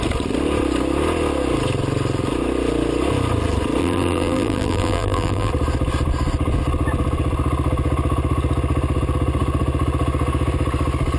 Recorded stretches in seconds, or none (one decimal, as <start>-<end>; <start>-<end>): 0.0-3.8; 5.5-11.2